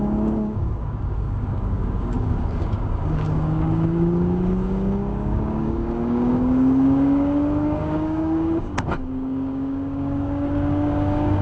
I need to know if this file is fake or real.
fake